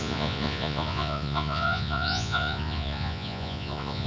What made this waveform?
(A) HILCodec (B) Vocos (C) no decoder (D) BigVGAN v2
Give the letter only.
B